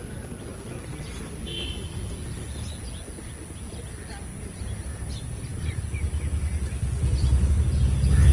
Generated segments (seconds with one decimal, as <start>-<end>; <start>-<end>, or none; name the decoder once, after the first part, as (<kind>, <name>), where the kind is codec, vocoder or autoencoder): 4.3-5.8 (vocoder, BigVGAN v2)